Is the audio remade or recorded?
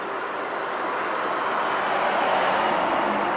recorded